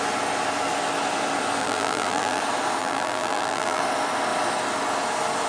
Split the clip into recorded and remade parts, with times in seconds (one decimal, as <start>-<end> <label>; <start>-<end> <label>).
0.0-1.6 recorded; 1.6-2.4 remade; 2.4-2.8 recorded; 2.8-3.8 remade; 3.8-5.5 recorded